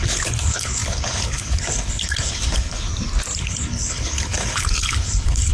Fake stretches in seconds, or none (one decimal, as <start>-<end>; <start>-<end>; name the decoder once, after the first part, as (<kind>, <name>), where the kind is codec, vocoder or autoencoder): 0.0-2.9 (codec, HILCodec); 3.4-5.5